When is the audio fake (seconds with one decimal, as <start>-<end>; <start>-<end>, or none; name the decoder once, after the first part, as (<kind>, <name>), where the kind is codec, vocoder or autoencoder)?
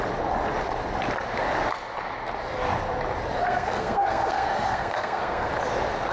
3.4-5.5 (codec, SNAC)